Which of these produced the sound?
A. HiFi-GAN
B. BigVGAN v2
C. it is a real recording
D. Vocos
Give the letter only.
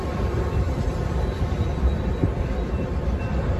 B